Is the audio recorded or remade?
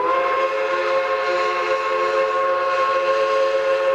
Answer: recorded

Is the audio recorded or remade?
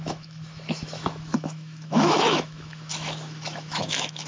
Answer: remade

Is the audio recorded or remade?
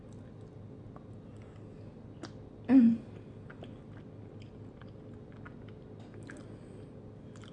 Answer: recorded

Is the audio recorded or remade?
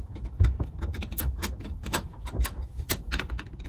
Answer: remade